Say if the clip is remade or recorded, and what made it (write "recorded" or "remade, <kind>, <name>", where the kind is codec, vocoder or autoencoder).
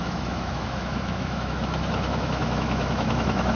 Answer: remade, autoencoder, DAC-VAE